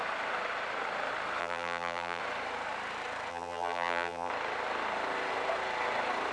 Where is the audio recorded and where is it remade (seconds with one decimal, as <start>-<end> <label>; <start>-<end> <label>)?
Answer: 0.0-1.4 recorded; 1.4-2.2 remade; 2.2-3.3 recorded; 3.3-4.3 remade; 4.3-6.3 recorded